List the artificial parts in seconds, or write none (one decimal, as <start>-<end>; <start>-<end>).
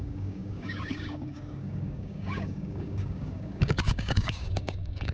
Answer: 0.0-5.1